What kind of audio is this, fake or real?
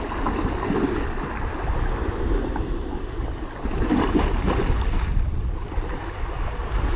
real